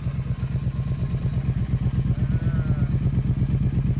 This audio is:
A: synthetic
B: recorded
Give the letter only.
B